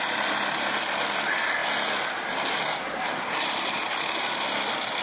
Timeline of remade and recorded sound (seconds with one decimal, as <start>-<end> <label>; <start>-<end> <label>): 0.0-1.6 remade; 1.6-3.0 recorded; 3.0-5.0 remade